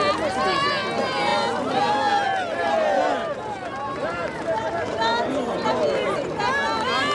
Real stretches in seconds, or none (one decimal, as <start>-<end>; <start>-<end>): 0.0-4.0; 6.2-7.1